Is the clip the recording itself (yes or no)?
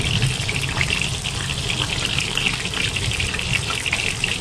yes